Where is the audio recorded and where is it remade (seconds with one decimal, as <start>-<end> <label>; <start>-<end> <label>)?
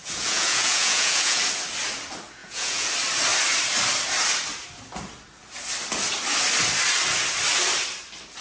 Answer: 0.0-1.4 remade; 1.4-2.4 recorded; 2.4-2.9 remade; 2.9-8.4 recorded